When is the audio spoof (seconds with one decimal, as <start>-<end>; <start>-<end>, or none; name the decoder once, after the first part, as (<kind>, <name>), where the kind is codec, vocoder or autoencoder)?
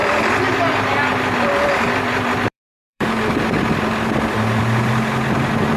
0.0-0.5 (vocoder, BigVGAN v2); 1.1-4.6